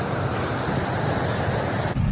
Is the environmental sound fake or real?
real